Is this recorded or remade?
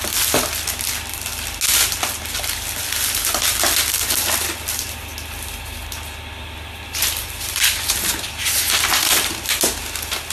recorded